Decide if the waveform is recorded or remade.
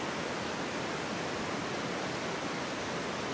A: recorded